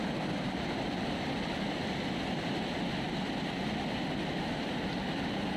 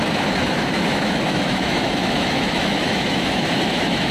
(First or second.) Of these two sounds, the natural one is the first